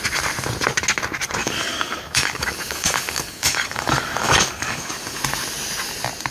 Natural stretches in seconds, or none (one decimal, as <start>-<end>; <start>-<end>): 0.0-1.4; 5.2-6.3